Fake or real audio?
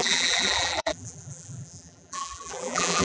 fake